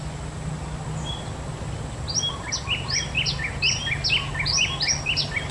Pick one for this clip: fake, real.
real